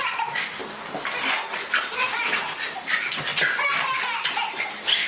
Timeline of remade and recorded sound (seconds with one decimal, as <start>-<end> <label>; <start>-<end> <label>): 0.0-5.1 recorded